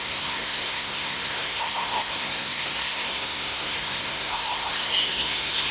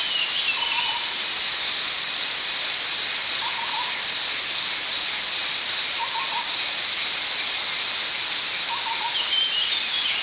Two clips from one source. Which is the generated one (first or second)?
first